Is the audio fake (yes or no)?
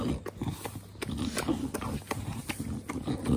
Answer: no